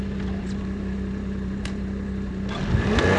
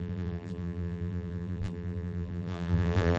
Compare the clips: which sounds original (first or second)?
first